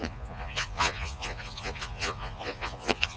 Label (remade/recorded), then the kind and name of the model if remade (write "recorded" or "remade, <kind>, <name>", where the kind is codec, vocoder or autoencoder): remade, vocoder, Vocos